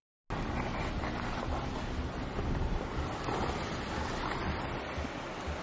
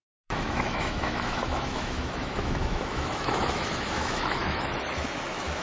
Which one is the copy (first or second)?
second